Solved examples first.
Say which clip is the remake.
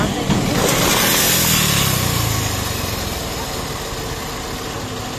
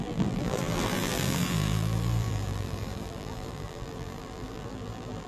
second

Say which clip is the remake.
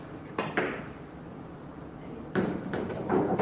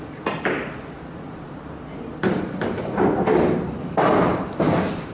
first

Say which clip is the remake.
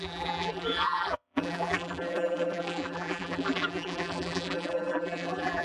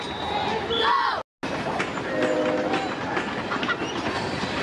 first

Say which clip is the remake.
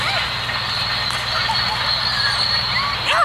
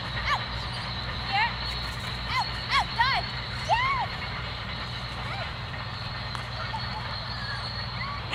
second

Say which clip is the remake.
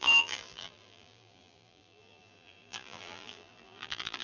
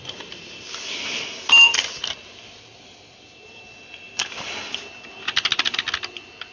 first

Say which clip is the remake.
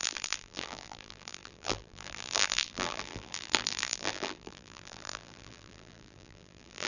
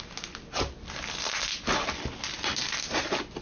first